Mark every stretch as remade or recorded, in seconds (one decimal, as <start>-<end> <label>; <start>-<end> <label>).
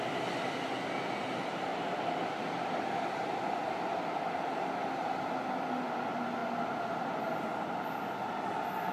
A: 0.0-8.9 recorded